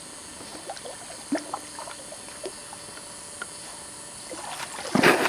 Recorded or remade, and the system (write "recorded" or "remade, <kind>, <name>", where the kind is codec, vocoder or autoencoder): recorded